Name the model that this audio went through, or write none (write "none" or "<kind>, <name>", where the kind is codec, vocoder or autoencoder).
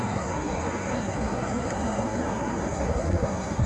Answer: codec, SNAC